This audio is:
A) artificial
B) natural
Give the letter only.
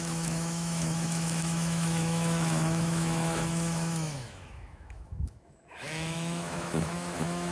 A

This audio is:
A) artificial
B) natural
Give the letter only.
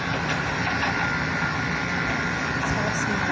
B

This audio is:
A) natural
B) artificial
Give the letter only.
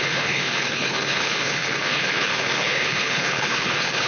B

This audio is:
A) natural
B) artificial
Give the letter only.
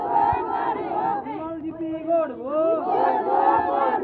A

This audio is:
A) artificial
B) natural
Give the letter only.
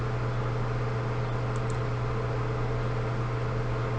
B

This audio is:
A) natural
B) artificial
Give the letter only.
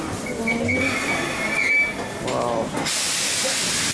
A